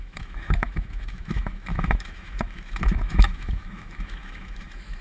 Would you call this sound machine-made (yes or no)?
yes